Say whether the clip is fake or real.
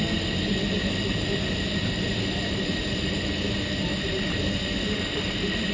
real